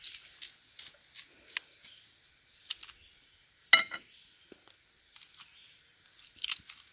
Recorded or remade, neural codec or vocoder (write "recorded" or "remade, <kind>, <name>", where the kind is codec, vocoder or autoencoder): recorded